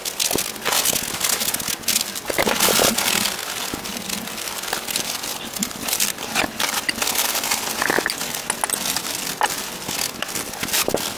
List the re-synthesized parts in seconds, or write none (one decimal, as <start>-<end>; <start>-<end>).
3.9-6.8